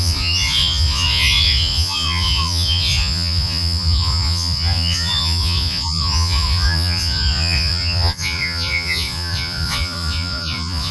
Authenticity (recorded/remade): remade